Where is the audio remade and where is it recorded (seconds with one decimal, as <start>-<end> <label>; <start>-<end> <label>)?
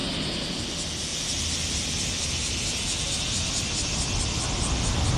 0.0-5.2 recorded